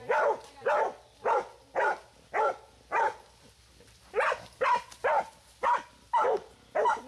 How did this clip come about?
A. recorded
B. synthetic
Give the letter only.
A